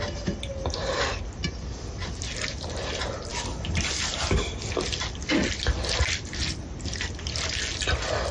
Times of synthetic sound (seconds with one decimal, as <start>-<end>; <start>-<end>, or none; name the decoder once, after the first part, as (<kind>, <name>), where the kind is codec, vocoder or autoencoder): none